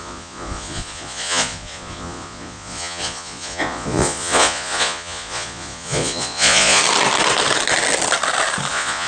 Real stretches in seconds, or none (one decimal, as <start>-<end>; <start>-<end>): 6.8-8.7